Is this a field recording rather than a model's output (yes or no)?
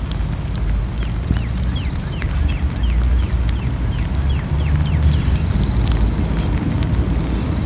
yes